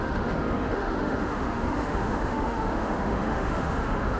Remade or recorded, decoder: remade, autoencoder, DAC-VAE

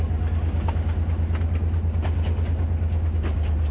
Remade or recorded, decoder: recorded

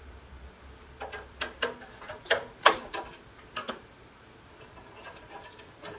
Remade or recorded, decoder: recorded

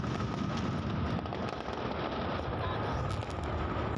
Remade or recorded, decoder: recorded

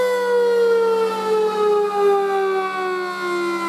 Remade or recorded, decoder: recorded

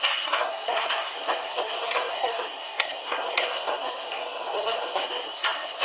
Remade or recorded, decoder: remade, codec, SNAC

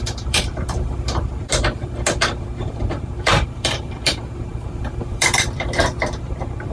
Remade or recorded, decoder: remade, vocoder, BigVGAN v2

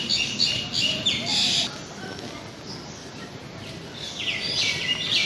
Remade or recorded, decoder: recorded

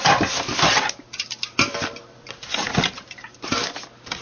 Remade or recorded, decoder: remade, vocoder, BigVGAN v2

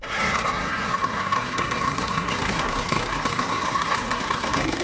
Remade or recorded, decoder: remade, codec, SNAC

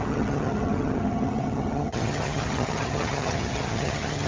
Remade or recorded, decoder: remade, vocoder, HiFi-GAN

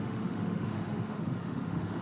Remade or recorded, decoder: remade, autoencoder, DAC-VAE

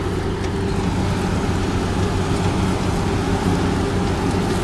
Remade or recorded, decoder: recorded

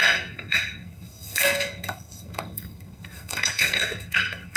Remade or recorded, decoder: remade, codec, SNAC